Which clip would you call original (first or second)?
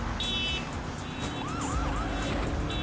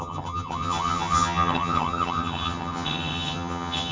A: first